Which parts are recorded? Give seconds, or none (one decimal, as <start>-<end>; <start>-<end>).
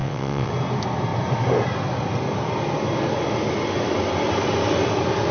0.5-5.3